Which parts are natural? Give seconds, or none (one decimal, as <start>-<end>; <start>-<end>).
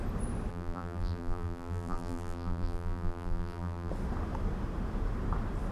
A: 0.0-0.5; 3.9-5.7